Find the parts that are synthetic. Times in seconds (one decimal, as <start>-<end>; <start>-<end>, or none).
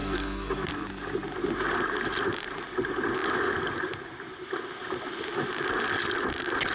0.0-0.7